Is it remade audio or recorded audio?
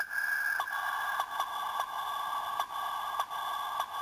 recorded